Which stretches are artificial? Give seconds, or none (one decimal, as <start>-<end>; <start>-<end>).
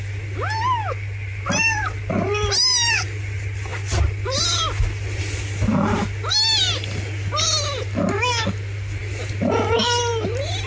1.3-3.0; 3.7-4.4